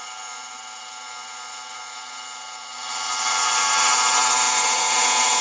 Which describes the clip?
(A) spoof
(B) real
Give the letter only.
A